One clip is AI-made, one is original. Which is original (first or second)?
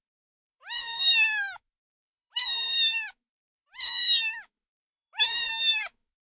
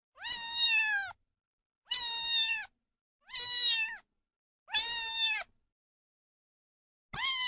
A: second